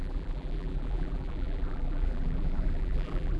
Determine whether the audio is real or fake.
fake